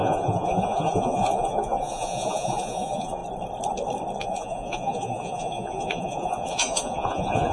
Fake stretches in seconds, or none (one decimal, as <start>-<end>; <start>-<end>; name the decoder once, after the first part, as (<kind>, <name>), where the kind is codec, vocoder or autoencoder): 0.0-3.2 (vocoder, Vocos); 4.2-7.5